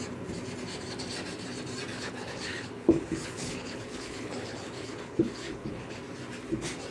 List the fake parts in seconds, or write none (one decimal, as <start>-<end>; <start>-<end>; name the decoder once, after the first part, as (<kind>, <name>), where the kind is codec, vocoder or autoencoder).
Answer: 1.9-6.0 (codec, HILCodec)